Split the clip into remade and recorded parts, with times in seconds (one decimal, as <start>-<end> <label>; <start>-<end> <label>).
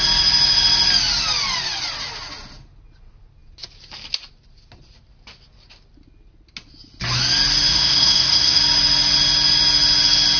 0.0-7.7 recorded; 7.7-8.6 remade; 8.6-10.4 recorded